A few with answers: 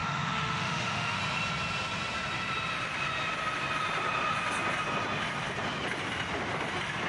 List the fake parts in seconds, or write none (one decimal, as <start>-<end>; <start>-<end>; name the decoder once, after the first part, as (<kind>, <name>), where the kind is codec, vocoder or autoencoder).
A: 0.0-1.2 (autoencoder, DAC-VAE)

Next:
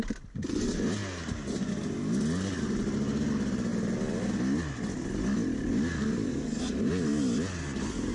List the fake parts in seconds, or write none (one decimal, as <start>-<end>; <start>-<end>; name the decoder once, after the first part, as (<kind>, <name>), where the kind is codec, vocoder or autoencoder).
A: none

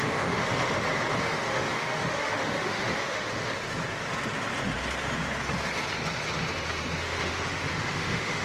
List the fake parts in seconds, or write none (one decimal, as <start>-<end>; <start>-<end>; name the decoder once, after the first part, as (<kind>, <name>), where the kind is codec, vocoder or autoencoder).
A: 0.0-0.4 (autoencoder, DAC-VAE); 1.2-3.5; 7.0-8.4

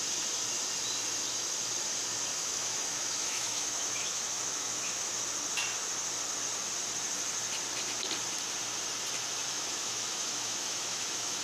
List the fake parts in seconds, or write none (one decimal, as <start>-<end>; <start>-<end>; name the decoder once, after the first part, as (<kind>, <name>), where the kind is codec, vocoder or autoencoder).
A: 2.3-5.2 (autoencoder, DAC-VAE); 9.4-11.4

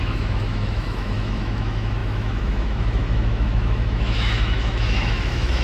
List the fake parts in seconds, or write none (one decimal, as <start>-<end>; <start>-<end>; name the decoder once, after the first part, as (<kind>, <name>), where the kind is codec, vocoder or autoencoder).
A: 0.0-5.6 (autoencoder, DAC-VAE)

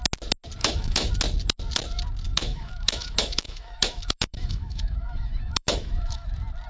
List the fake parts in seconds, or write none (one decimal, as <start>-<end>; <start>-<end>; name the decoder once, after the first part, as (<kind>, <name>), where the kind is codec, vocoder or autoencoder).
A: 0.6-1.1 (autoencoder, DAC-VAE); 2.3-6.3

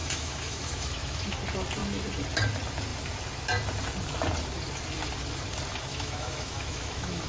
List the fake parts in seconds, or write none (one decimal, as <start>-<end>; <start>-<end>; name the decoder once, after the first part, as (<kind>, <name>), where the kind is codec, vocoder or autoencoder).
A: 0.0-1.4 (autoencoder, DAC-VAE); 5.9-7.3

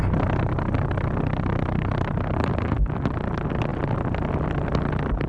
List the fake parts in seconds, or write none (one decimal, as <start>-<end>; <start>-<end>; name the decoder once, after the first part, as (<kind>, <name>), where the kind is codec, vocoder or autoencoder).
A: none